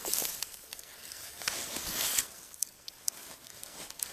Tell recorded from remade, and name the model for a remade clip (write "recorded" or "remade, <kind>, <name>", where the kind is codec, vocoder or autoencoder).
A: remade, codec, SNAC